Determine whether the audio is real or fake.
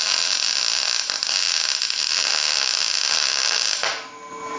real